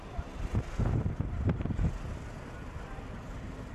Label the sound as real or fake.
real